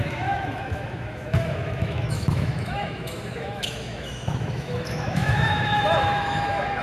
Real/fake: fake